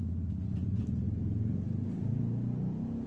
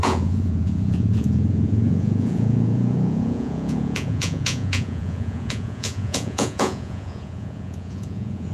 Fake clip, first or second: second